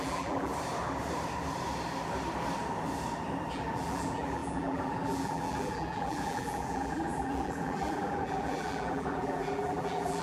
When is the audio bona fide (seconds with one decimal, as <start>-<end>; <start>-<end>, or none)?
0.5-3.5